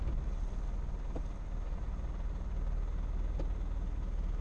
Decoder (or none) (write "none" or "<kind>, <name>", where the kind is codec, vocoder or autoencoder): none